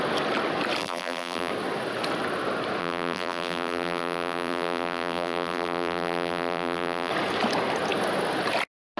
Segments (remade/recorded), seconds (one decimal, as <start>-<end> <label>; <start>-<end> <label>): 0.0-0.8 recorded; 0.8-1.5 remade; 1.5-2.8 recorded; 2.8-7.1 remade; 7.1-9.0 recorded

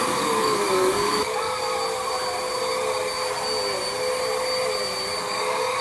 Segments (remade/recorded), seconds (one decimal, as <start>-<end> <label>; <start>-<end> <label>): 0.0-1.7 remade; 1.7-5.2 recorded; 5.2-5.8 remade

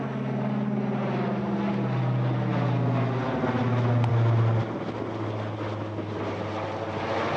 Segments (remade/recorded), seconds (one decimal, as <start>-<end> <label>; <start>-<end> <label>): 0.0-7.4 recorded

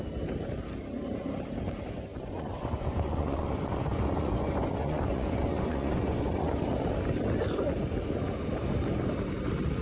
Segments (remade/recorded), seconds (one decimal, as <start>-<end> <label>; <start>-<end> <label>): 0.0-2.1 recorded; 2.1-6.5 remade; 6.5-9.8 recorded